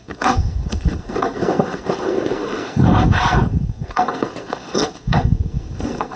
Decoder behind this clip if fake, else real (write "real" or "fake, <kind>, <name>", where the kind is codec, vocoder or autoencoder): fake, codec, SNAC